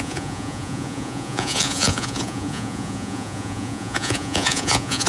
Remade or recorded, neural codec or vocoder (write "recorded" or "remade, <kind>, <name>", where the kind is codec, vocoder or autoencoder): remade, vocoder, Vocos